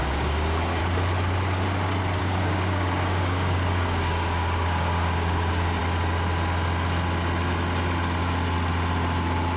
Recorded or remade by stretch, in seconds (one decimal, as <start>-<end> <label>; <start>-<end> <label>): 0.0-0.8 remade; 0.8-2.2 recorded; 2.2-5.8 remade; 5.8-9.6 recorded